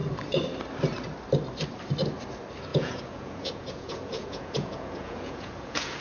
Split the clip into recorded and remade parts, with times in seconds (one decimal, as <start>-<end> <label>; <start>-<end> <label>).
0.0-2.7 recorded; 2.7-6.0 remade